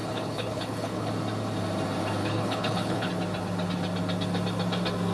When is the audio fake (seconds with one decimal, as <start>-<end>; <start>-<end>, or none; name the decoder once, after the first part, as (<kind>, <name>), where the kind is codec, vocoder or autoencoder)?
0.0-1.1 (codec, HILCodec); 2.2-3.1